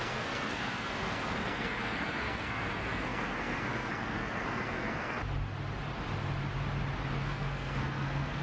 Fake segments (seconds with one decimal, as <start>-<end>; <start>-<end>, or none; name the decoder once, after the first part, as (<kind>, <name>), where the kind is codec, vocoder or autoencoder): 0.0-5.2 (codec, SNAC); 7.2-8.4

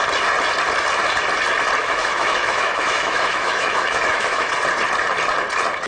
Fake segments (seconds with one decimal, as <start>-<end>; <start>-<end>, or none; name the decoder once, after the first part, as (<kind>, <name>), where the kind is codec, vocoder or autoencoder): 1.8-4.5 (autoencoder, DAC-VAE)

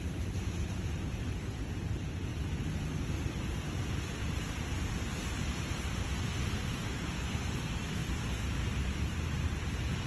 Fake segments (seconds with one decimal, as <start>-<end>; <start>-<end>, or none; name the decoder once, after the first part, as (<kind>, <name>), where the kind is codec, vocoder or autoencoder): 0.0-2.3 (vocoder, BigVGAN v2); 5.3-8.0; 8.6-10.1

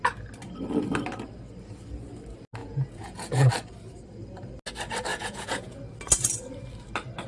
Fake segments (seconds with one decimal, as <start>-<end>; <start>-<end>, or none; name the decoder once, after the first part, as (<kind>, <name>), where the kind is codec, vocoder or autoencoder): 2.6-3.5 (vocoder, Vocos); 5.1-5.8

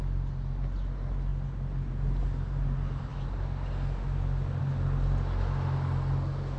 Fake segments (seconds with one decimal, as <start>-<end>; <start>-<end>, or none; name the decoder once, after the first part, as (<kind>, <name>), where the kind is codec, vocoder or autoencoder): none

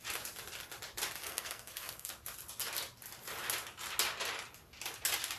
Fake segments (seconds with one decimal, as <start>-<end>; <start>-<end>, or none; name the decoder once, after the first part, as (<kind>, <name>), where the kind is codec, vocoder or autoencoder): 1.2-2.1 (codec, SNAC)